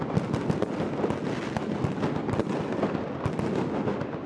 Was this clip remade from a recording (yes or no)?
no